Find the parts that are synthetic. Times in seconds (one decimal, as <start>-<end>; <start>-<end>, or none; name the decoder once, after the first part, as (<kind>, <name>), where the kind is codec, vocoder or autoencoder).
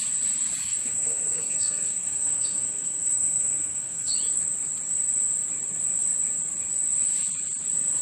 0.6-4.1 (codec, SNAC)